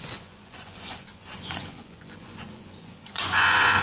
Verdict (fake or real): fake